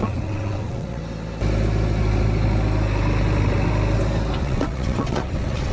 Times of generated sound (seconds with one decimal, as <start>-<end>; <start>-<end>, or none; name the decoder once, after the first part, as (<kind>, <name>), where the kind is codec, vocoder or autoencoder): 0.0-1.0 (vocoder, WaveNeXt); 4.4-5.7